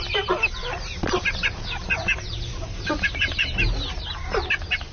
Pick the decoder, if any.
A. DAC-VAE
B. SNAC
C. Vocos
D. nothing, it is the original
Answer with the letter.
D